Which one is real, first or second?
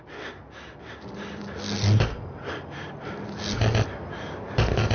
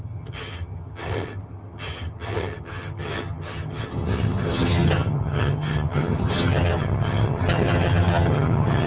first